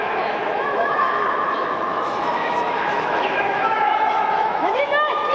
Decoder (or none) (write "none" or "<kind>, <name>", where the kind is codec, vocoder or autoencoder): autoencoder, DAC-VAE